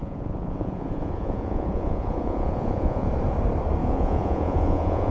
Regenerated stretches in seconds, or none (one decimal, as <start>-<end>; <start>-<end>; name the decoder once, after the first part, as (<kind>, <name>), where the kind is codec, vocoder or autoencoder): 0.0-3.1 (vocoder, Vocos); 3.8-5.1